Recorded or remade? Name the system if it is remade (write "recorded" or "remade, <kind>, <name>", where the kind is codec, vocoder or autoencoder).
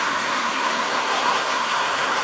remade, codec, SNAC